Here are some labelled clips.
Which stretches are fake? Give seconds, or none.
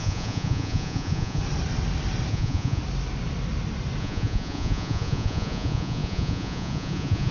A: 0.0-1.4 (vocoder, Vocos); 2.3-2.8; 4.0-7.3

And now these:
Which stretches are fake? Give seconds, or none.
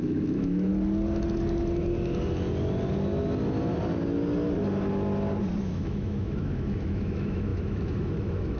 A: 0.0-0.7 (autoencoder, DAC-VAE); 5.6-8.6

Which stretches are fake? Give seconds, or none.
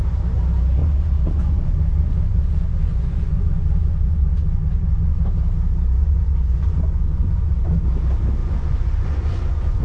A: 0.8-5.2 (vocoder, Vocos); 6.0-7.8; 8.4-9.8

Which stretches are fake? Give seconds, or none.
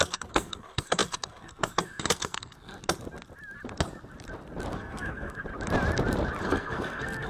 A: 0.0-2.7 (codec, SNAC); 4.7-5.4; 6.4-7.3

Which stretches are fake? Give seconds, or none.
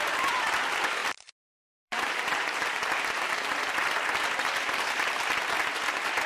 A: 1.0-3.6 (vocoder, BigVGAN v2)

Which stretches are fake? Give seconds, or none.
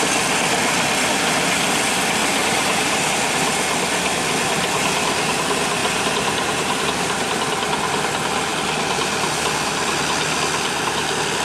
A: 2.2-3.0 (vocoder, BigVGAN v2); 5.8-6.8